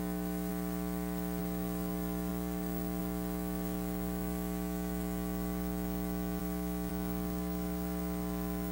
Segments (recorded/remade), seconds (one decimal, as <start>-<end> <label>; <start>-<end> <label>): 0.0-0.5 remade; 0.5-1.4 recorded; 1.4-8.7 remade